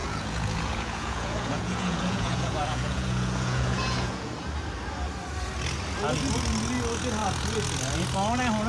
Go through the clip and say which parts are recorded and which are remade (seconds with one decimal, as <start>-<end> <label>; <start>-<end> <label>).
0.0-4.3 remade; 4.3-8.7 recorded